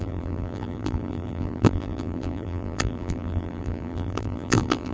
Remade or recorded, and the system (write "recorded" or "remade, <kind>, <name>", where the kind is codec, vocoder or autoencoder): remade, vocoder, BigVGAN v2